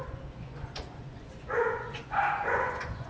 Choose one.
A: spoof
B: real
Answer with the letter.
A